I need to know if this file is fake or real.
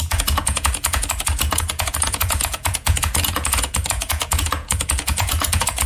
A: fake